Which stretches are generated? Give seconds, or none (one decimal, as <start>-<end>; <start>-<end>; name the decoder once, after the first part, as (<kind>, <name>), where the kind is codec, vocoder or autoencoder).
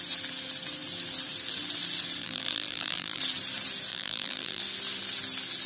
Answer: 2.2-3.2 (vocoder, BigVGAN v2); 3.9-4.6